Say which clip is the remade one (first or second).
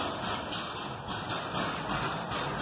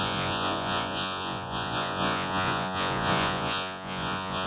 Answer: second